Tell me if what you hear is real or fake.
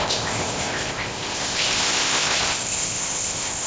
fake